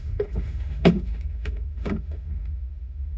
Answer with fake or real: fake